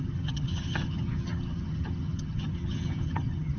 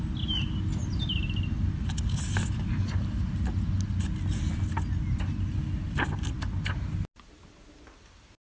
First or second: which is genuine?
second